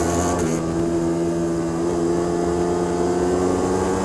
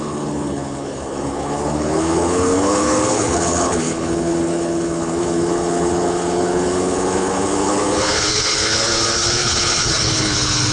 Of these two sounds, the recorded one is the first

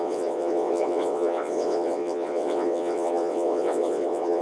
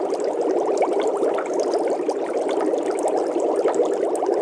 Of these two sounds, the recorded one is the second